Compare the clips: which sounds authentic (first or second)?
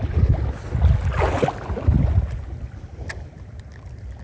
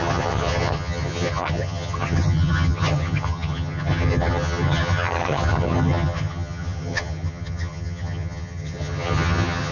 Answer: first